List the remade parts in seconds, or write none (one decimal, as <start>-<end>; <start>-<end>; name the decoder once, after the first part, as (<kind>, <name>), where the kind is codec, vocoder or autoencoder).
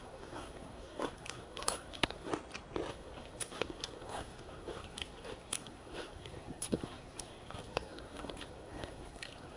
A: 0.0-2.3 (codec, SNAC); 2.9-9.6